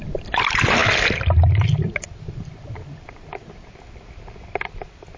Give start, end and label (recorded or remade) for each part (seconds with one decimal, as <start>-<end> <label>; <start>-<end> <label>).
0.0-5.2 recorded